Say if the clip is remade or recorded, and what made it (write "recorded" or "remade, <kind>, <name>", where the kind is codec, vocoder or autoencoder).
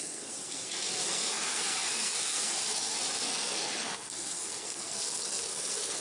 remade, codec, SNAC